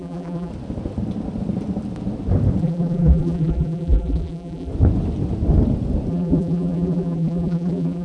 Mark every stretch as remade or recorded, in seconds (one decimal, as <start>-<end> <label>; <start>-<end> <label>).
0.0-0.5 remade; 0.5-2.6 recorded; 2.6-4.7 remade; 4.7-6.1 recorded; 6.1-8.0 remade